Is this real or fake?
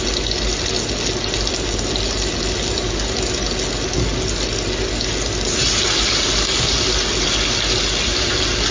real